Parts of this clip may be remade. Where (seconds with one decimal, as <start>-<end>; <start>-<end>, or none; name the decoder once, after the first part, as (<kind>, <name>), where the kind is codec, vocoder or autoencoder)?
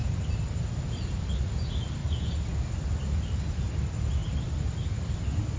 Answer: none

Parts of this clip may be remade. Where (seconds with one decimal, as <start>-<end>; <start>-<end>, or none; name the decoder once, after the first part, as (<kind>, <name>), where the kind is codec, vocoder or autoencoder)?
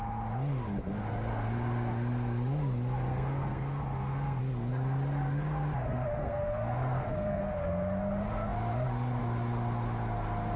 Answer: 3.1-4.4 (codec, SNAC); 6.2-7.4